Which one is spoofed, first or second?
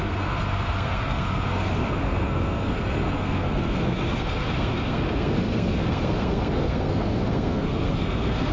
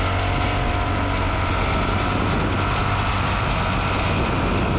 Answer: first